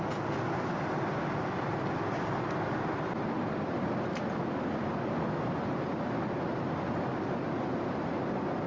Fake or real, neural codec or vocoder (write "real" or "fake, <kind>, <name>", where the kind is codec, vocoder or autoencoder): real